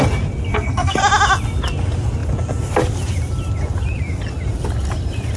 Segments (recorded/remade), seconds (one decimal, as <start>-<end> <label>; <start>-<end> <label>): 0.0-0.5 recorded; 0.5-1.0 remade; 1.0-5.4 recorded